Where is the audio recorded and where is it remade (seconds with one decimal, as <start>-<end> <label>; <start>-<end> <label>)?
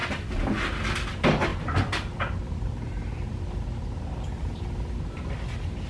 0.0-5.9 recorded